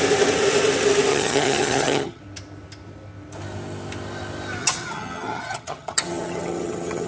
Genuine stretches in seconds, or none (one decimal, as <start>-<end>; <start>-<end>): 0.0-1.1; 2.2-4.6